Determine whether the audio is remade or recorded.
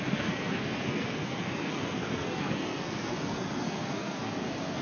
remade